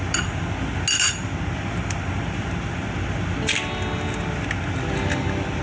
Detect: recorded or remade recorded